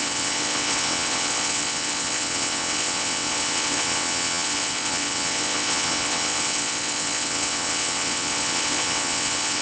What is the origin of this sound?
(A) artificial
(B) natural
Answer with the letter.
A